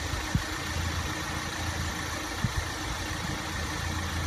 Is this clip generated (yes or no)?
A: no